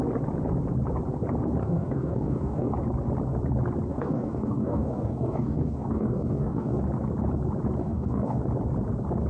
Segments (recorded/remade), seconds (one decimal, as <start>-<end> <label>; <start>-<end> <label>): 0.0-1.6 recorded; 1.6-2.7 remade; 2.7-3.9 recorded; 3.9-6.8 remade; 6.8-7.8 recorded; 7.8-8.4 remade; 8.4-9.3 recorded